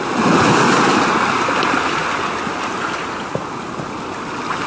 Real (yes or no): yes